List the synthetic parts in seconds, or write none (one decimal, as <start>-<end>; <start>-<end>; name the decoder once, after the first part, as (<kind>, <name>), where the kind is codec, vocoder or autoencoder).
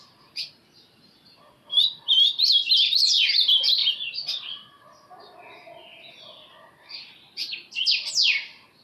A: none